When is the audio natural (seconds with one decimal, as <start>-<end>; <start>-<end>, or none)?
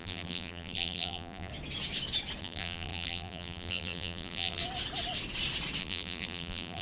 1.5-2.4; 4.6-5.8